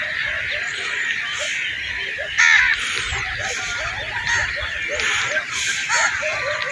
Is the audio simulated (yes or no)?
no